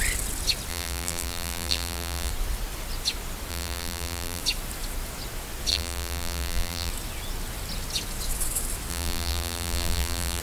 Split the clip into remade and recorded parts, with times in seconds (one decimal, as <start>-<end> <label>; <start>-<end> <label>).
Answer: 0.0-0.7 recorded; 0.7-2.3 remade; 2.3-3.5 recorded; 3.5-4.4 remade; 4.4-5.7 recorded; 5.7-6.9 remade; 6.9-8.9 recorded; 8.9-10.4 remade